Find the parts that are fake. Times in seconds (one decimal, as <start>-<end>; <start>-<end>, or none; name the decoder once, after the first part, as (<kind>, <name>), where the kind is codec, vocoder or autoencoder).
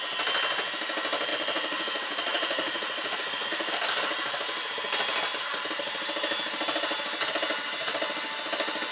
1.3-3.7 (vocoder, Vocos)